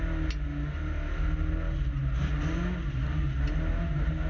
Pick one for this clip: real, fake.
real